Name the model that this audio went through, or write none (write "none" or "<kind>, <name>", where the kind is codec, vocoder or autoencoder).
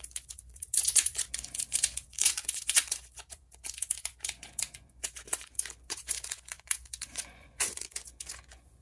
vocoder, Vocos